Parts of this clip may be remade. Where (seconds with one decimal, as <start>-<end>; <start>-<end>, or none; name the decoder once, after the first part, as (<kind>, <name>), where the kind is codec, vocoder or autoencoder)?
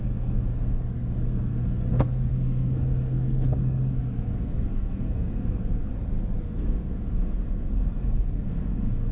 0.0-5.9 (codec, SNAC); 6.4-9.1